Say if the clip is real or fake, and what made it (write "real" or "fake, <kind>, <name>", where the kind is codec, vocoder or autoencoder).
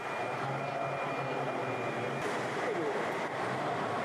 real